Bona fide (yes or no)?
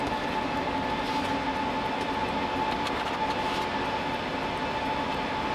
yes